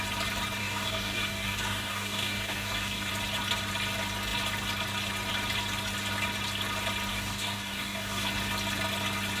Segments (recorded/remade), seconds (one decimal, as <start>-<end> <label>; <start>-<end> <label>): 0.0-0.6 recorded; 0.6-3.1 remade; 3.1-7.1 recorded; 7.1-8.3 remade; 8.3-9.4 recorded